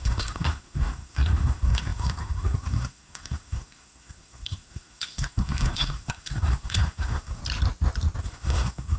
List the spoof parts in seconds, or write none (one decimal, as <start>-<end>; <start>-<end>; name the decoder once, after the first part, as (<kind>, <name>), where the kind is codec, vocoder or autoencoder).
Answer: 0.0-7.4 (codec, SNAC); 8.2-9.0